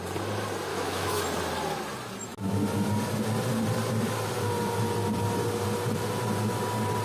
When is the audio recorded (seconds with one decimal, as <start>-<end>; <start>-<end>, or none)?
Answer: 0.0-0.7; 1.2-7.0